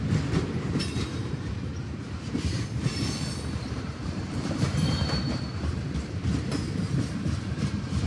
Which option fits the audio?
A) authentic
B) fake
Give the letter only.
B